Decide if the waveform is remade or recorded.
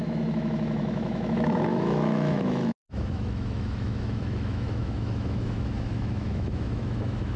remade